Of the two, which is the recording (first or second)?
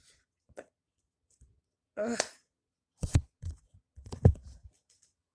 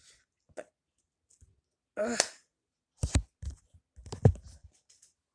second